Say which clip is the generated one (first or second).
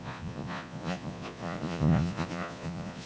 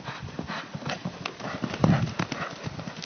first